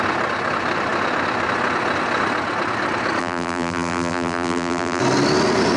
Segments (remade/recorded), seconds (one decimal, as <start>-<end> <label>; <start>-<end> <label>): 0.0-3.2 recorded; 3.2-5.0 remade; 5.0-5.8 recorded